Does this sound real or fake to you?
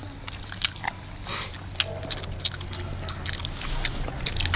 real